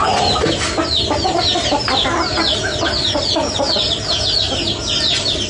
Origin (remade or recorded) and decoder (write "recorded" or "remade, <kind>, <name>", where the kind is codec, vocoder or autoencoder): recorded